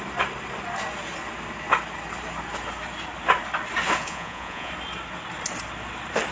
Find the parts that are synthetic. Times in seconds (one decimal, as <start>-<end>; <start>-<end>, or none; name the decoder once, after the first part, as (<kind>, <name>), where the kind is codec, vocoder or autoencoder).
4.0-4.7 (vocoder, Vocos)

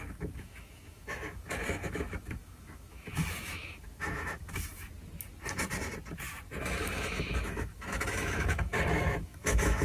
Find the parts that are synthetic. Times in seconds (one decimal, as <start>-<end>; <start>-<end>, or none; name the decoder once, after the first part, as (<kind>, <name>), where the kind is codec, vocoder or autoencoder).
0.0-4.9 (autoencoder, DAC-VAE); 6.6-9.8

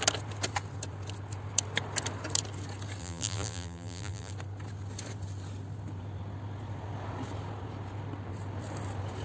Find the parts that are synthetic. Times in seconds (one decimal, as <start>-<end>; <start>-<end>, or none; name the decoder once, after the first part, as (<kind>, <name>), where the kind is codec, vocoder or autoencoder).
3.0-4.3 (vocoder, BigVGAN v2)